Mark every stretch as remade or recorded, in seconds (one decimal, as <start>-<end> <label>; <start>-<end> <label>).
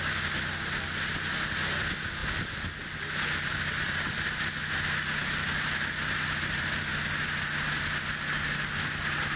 0.0-9.4 recorded